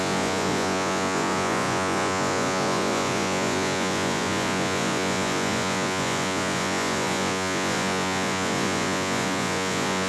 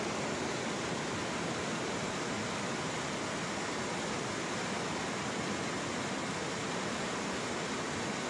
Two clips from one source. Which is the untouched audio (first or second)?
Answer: second